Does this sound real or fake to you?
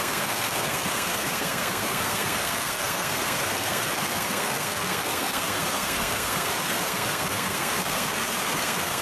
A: fake